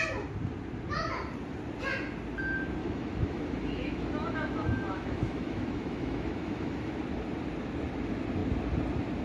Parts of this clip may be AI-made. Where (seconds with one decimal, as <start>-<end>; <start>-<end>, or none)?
2.8-7.0